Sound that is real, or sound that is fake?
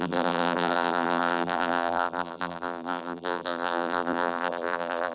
fake